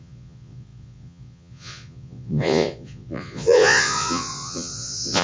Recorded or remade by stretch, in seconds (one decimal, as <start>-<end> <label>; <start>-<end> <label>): 0.0-5.2 remade

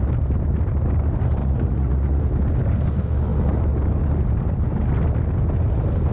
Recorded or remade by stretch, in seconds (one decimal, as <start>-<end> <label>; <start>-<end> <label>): 0.0-1.4 recorded; 1.4-2.2 remade; 2.2-6.1 recorded